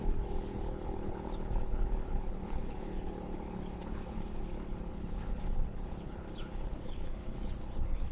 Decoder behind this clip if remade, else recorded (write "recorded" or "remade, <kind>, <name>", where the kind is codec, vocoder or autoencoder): remade, codec, HILCodec